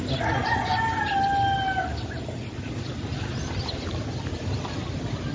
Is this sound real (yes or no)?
yes